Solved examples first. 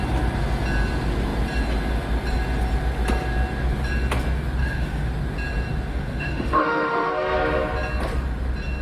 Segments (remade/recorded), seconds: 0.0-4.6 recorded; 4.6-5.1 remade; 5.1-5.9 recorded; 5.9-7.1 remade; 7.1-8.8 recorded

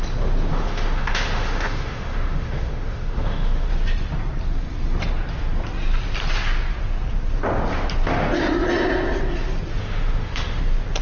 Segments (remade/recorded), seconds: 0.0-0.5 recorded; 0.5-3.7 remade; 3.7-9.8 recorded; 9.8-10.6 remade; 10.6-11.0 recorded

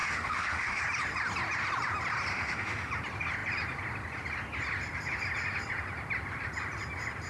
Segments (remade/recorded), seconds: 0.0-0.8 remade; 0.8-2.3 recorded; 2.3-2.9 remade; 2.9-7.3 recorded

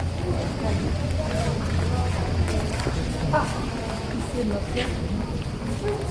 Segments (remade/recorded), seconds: 0.0-3.5 recorded; 3.5-4.1 remade; 4.1-6.1 recorded

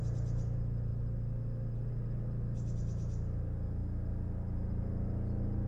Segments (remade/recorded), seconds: 0.0-5.7 recorded

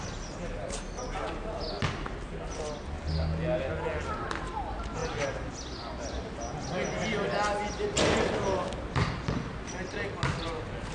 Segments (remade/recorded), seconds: 0.0-10.9 recorded

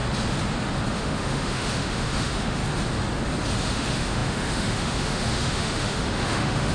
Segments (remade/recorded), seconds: 0.0-0.9 recorded; 0.9-2.6 remade; 2.6-3.6 recorded; 3.6-6.7 remade